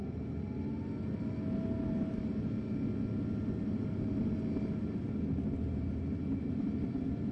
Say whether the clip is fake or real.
real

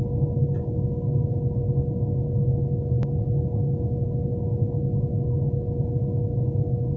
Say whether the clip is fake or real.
real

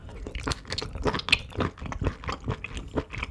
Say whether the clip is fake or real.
real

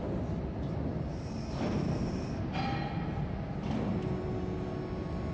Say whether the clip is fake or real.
real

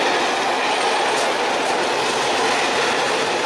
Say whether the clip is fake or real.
real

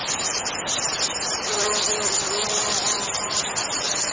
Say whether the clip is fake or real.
real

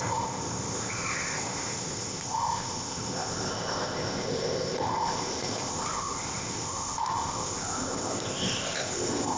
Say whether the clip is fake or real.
fake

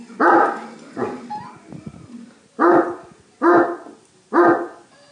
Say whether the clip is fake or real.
real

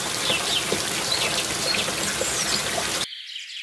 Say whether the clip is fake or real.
real